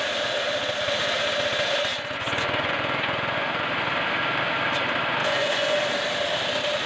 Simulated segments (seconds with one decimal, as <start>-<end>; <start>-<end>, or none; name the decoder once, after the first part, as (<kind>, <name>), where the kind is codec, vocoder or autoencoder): 1.9-3.5 (vocoder, Vocos); 5.2-5.8